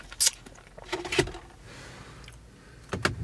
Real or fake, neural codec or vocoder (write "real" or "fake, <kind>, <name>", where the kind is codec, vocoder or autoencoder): real